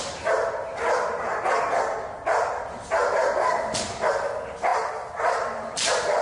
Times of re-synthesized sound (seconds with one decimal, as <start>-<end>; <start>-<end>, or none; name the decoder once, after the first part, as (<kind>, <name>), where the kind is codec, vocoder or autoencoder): none